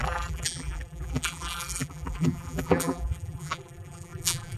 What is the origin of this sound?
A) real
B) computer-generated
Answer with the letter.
B